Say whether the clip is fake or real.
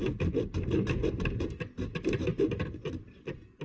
real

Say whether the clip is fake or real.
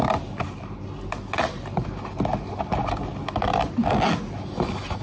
real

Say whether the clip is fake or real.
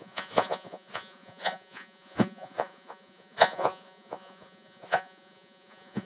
fake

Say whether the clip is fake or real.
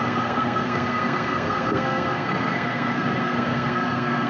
fake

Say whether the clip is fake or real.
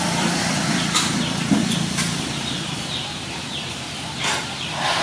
fake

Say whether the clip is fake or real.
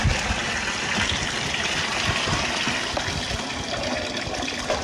real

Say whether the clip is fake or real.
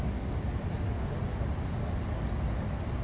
real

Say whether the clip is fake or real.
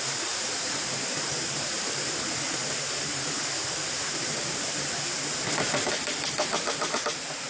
fake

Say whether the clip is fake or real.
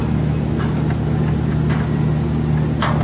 real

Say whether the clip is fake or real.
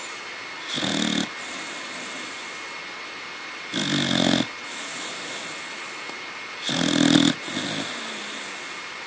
real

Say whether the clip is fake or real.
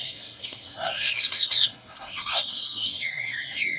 fake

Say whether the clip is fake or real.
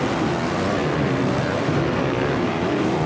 real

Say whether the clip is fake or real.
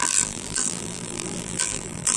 fake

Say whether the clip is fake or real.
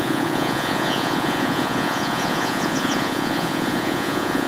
fake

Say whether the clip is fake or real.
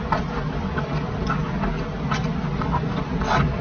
real